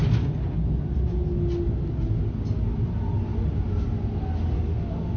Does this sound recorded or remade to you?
recorded